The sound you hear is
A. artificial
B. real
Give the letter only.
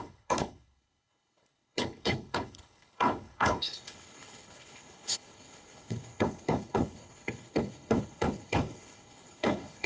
A